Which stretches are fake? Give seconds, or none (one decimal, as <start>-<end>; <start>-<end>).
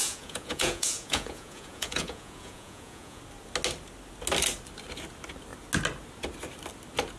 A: 0.0-3.2